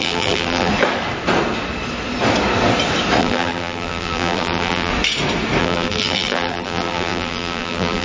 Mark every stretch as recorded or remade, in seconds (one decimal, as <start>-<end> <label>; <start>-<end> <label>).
0.0-0.7 remade; 0.7-3.2 recorded; 3.2-4.9 remade; 4.9-5.6 recorded; 5.6-8.0 remade